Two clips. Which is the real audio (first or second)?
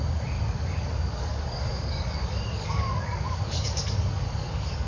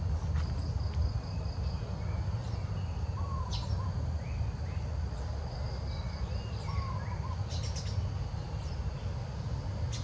second